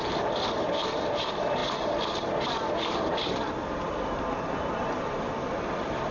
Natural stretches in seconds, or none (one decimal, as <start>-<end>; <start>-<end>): 0.0-6.1